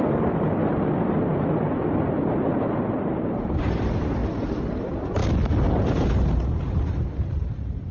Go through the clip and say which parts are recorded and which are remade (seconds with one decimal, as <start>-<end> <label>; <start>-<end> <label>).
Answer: 0.0-0.6 remade; 0.6-2.3 recorded; 2.3-4.2 remade; 4.2-4.7 recorded; 4.7-5.2 remade; 5.2-5.8 recorded; 5.8-7.9 remade